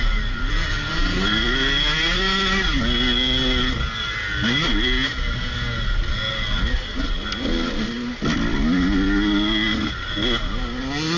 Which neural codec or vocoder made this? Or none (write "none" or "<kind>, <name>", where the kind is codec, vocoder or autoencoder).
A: none